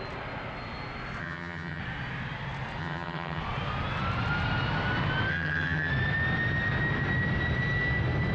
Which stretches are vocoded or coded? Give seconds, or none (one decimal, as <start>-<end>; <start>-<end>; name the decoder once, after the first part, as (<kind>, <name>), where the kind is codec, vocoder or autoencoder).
1.2-1.8 (vocoder, HiFi-GAN); 2.8-3.4; 5.3-5.9